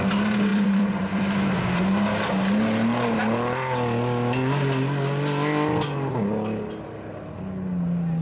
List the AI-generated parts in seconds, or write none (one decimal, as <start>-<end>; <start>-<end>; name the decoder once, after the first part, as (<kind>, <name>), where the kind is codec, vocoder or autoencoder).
0.5-1.6 (vocoder, BigVGAN v2)